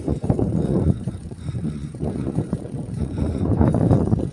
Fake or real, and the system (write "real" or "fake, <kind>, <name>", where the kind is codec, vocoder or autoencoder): fake, vocoder, Vocos